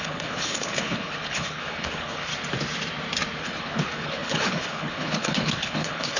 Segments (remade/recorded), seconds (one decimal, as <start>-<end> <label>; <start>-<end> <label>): 0.0-2.3 remade; 2.3-3.4 recorded; 3.4-6.2 remade